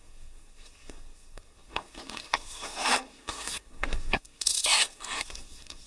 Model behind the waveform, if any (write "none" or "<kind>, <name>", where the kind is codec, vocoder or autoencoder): codec, SNAC